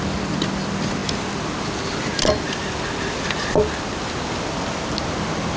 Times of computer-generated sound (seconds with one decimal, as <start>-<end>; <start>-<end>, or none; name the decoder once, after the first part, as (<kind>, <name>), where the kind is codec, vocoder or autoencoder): none